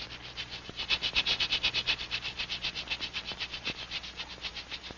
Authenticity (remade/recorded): recorded